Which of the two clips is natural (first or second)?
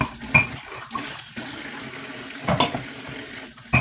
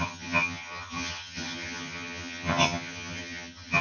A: first